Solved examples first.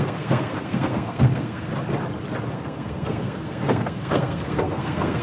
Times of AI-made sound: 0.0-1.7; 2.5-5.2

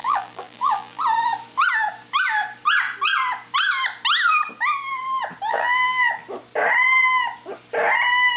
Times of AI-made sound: 0.0-1.0; 5.5-6.1

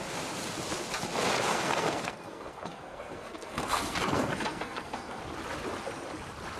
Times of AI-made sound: 1.5-5.2

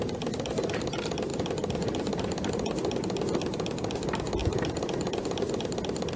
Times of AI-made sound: 1.3-2.5; 4.4-5.5

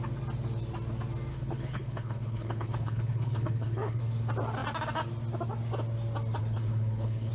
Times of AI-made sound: 1.3-4.0; 6.4-7.3

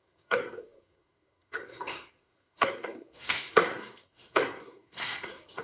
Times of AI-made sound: 0.0-5.6